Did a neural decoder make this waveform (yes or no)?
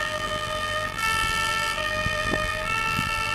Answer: yes